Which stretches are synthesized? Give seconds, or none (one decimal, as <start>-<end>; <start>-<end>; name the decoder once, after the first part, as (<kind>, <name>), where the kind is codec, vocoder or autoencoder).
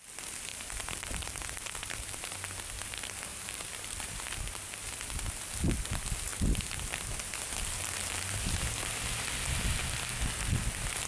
0.5-2.4 (vocoder, BigVGAN v2); 3.3-5.1